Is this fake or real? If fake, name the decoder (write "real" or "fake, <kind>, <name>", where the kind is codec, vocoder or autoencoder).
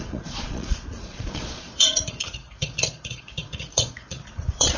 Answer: fake, vocoder, Vocos